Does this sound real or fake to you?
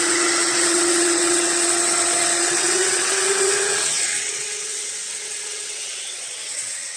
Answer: fake